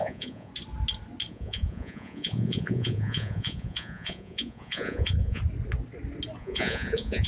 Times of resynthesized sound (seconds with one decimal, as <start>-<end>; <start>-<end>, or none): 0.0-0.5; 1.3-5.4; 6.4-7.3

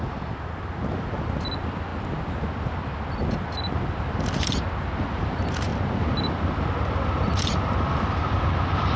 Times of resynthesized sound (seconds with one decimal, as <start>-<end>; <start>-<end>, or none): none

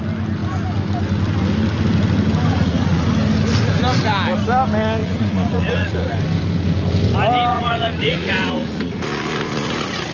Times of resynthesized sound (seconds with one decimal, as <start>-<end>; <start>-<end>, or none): 2.5-3.1; 5.0-6.1; 7.5-10.1

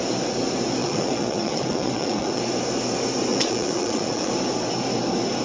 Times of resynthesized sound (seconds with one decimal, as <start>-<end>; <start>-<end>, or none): 0.8-2.4; 3.3-4.3

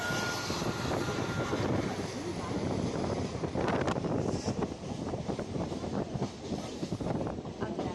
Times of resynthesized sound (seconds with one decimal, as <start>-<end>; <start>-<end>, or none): none